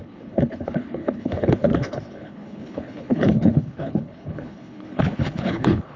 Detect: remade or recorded remade